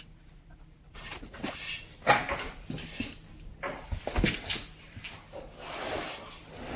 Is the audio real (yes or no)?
yes